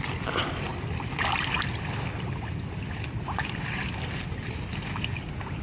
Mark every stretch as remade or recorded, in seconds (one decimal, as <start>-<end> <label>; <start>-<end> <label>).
0.0-5.6 recorded